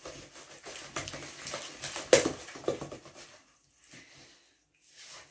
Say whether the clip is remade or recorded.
recorded